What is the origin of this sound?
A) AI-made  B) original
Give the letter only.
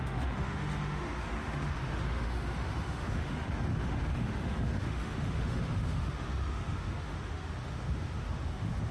A